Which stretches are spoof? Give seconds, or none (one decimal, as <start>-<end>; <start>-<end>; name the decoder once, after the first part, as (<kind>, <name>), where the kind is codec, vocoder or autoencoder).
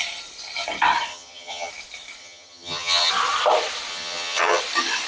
1.1-1.7 (vocoder, HiFi-GAN); 2.2-3.1; 3.9-4.6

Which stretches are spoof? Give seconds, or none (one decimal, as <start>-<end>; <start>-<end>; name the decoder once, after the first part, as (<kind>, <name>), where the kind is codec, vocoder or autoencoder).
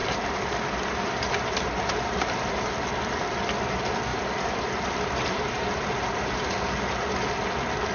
0.0-2.7 (vocoder, BigVGAN v2); 4.1-6.5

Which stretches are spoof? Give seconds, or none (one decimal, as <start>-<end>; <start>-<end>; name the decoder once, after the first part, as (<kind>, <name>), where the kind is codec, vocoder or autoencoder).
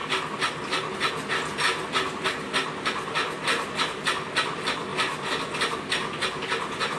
none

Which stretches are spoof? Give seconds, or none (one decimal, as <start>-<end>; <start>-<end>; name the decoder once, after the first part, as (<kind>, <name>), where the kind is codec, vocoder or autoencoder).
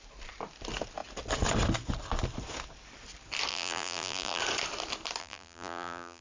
3.5-4.4 (vocoder, BigVGAN v2); 5.2-6.2